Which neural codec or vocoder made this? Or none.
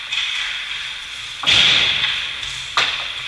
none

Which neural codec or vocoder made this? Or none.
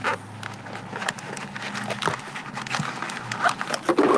none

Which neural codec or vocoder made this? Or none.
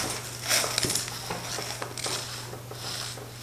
none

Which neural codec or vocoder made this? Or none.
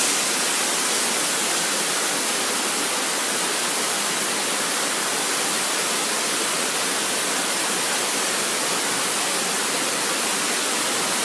none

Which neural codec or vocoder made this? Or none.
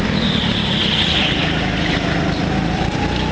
none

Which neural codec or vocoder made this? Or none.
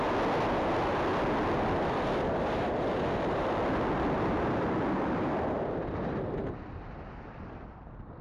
none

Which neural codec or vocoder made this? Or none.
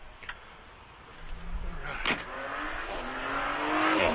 none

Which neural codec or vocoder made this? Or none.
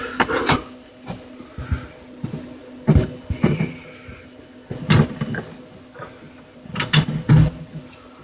none